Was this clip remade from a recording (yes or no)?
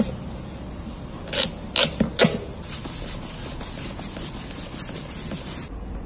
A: no